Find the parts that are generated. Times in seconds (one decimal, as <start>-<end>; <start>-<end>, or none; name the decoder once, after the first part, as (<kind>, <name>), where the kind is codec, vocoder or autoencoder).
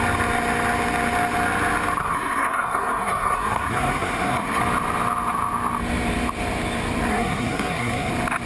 2.0-4.6 (codec, SNAC); 7.1-8.1